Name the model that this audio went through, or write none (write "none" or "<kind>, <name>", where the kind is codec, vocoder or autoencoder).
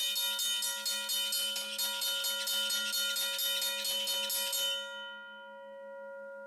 none